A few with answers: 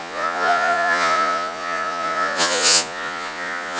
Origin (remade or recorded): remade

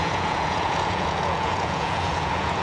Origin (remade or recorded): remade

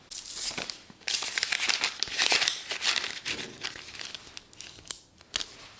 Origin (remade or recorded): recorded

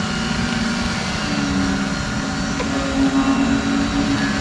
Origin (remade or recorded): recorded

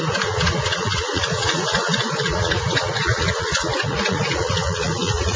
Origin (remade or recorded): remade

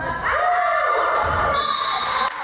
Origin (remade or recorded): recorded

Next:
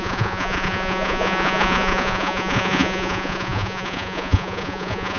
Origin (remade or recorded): remade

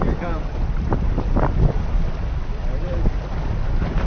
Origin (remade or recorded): recorded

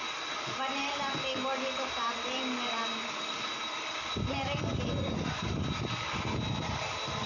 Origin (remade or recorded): recorded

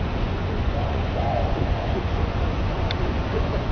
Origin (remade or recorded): remade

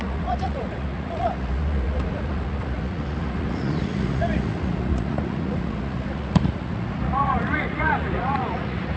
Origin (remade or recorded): remade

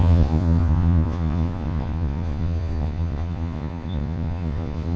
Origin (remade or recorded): remade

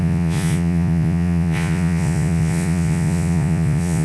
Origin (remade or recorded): remade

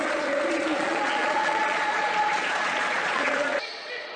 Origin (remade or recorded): remade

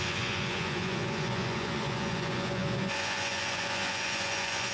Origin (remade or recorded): remade